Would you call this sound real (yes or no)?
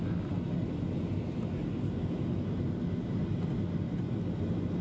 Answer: yes